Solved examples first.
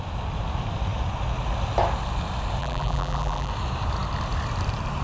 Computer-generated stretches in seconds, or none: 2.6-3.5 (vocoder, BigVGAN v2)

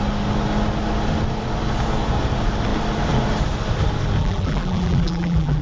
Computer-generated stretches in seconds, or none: 4.2-5.6 (vocoder, BigVGAN v2)

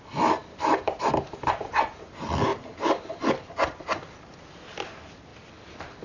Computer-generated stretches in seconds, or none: 0.4-2.1 (vocoder, BigVGAN v2); 5.3-6.0

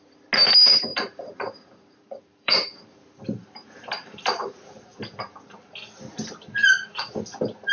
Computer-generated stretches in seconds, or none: 0.9-5.0 (vocoder, BigVGAN v2); 6.6-7.2

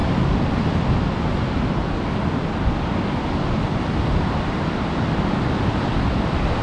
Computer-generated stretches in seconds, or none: 4.0-6.6 (vocoder, BigVGAN v2)

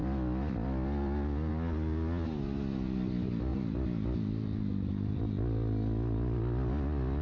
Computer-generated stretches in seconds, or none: 3.5-5.2 (vocoder, BigVGAN v2)

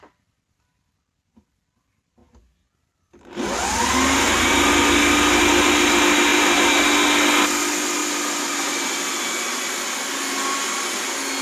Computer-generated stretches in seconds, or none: 6.3-7.0 (vocoder, BigVGAN v2)